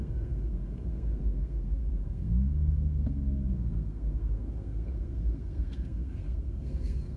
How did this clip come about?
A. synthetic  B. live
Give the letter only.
A